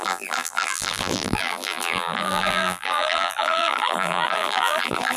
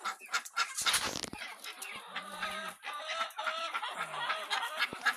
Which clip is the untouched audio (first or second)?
second